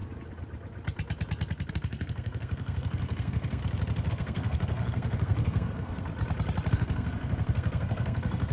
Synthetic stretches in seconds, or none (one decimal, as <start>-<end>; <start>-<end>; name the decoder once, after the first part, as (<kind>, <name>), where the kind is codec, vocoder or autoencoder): 1.7-3.6 (codec, SNAC); 4.1-6.1; 6.7-8.5

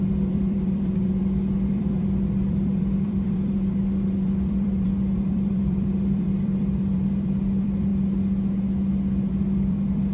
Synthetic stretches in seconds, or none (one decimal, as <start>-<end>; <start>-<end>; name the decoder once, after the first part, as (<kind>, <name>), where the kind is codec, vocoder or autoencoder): 0.0-7.9 (vocoder, BigVGAN v2); 9.3-10.1

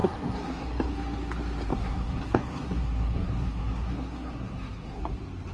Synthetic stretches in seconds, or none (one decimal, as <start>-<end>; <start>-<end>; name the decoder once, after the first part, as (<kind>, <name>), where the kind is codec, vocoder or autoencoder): 0.0-0.9 (codec, SNAC); 1.7-5.0

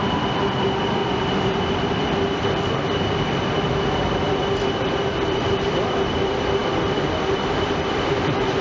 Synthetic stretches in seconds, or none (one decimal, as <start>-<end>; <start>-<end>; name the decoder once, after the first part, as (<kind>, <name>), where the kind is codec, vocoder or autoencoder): 0.0-1.0 (vocoder, BigVGAN v2); 1.7-8.6

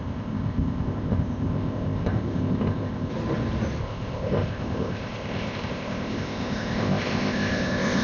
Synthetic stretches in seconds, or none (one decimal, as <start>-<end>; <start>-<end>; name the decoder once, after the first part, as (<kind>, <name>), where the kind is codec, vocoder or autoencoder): 0.0-3.1 (codec, ZipCodec); 3.8-8.0

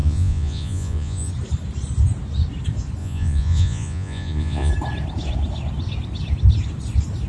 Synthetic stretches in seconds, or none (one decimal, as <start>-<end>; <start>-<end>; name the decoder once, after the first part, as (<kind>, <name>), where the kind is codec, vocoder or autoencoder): 0.0-1.3 (vocoder, Vocos); 3.0-4.7

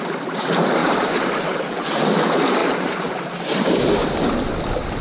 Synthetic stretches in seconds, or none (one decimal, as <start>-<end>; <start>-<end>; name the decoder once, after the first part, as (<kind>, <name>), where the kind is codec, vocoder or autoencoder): 0.8-1.7 (vocoder, BigVGAN v2); 2.6-3.5